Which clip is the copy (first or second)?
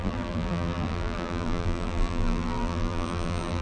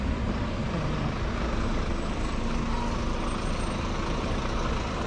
first